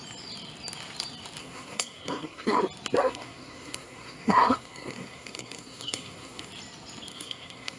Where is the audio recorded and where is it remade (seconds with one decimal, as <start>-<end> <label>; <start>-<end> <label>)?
0.0-1.4 recorded; 1.4-2.6 remade; 2.6-3.0 recorded; 3.0-6.5 remade; 6.5-7.1 recorded; 7.1-7.8 remade